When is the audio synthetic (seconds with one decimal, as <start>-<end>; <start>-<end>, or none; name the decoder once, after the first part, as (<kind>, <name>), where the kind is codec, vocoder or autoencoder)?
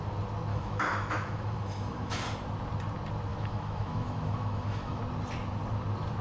0.5-2.2 (autoencoder, DAC-VAE); 3.3-5.0